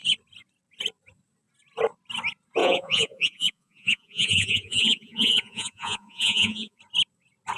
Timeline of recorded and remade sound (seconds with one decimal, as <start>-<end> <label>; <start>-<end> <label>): 0.0-2.6 recorded; 2.6-6.8 remade; 6.8-7.6 recorded